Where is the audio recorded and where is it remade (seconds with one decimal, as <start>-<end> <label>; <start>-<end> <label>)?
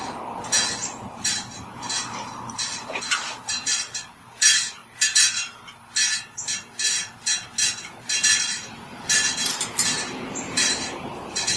0.0-4.8 remade; 4.8-8.4 recorded; 8.4-11.6 remade